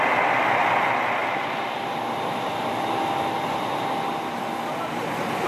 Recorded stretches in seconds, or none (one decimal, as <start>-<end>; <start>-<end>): 0.0-5.5